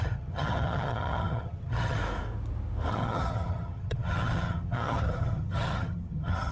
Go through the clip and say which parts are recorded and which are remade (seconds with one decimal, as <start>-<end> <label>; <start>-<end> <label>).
0.0-2.0 remade; 2.0-2.9 recorded; 2.9-6.5 remade